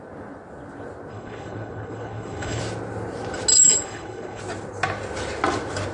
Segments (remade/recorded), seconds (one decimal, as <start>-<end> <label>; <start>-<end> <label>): 0.0-1.1 recorded; 1.1-2.6 remade; 2.6-3.5 recorded; 3.5-4.4 remade; 4.4-5.9 recorded